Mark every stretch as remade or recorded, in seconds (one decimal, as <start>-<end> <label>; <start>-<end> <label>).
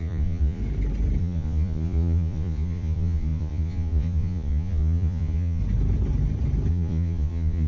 0.0-0.6 remade; 0.6-1.2 recorded; 1.2-5.6 remade; 5.6-6.7 recorded; 6.7-7.7 remade